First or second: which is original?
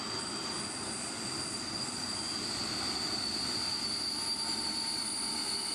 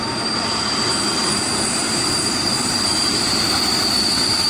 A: first